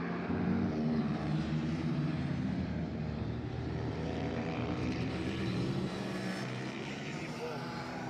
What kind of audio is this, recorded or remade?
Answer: remade